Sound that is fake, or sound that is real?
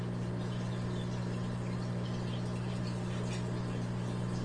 real